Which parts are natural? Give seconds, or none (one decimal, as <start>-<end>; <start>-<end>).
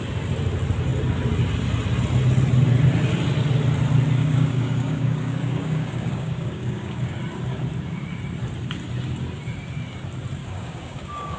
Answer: 0.0-4.2; 7.2-10.4